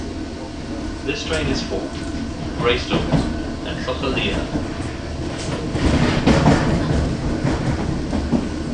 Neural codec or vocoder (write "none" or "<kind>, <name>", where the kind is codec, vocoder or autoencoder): none